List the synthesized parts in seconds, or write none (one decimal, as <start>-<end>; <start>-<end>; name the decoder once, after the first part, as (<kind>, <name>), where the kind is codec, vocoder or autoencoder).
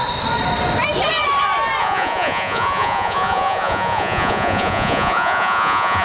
1.8-6.0 (vocoder, Vocos)